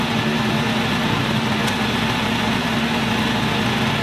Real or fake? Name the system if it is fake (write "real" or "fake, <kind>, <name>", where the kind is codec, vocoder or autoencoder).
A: real